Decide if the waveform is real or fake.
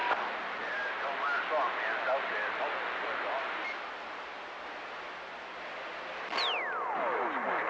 real